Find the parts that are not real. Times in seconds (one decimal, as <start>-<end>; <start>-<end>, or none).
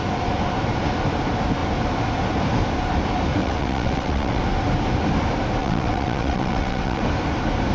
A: 3.4-4.4; 5.6-7.0